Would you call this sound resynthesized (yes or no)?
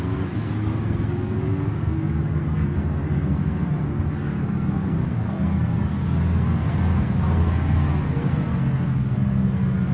yes